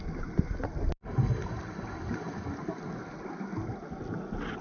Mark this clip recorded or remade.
recorded